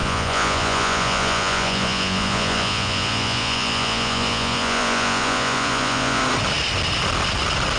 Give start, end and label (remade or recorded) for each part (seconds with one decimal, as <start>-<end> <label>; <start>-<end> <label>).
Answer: 0.0-6.2 remade; 6.2-7.8 recorded